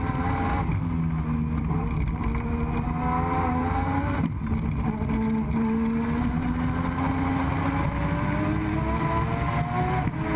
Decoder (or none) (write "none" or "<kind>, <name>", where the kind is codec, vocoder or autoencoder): none